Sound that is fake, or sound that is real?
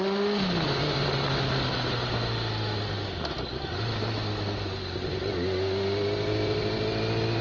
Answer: real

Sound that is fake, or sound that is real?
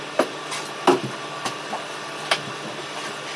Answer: real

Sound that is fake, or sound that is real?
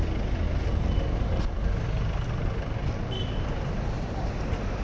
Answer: real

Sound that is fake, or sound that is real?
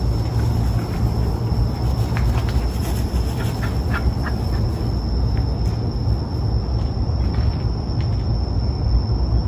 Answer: real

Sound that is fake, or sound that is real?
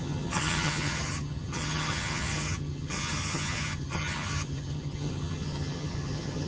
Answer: fake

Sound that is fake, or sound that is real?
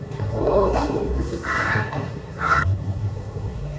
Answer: fake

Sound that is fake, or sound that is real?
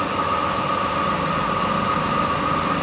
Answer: real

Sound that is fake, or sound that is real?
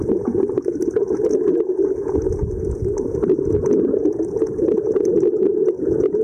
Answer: fake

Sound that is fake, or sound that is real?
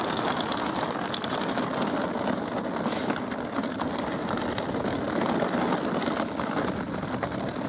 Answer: real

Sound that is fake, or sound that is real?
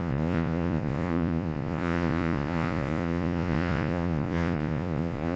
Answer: fake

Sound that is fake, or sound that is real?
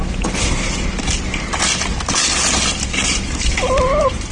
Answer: real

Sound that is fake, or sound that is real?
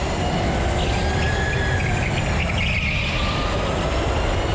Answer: real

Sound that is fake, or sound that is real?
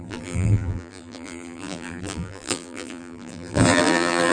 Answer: fake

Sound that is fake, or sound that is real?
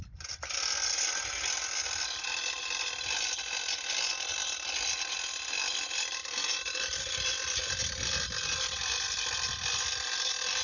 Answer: real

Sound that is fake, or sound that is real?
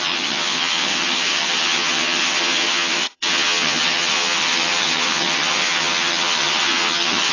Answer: fake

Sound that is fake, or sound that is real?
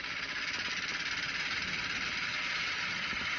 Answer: real